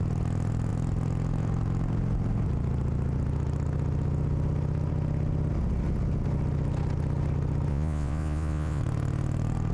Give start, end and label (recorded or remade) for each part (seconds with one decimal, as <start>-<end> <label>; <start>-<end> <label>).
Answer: 0.0-7.7 recorded; 7.7-8.8 remade; 8.8-9.7 recorded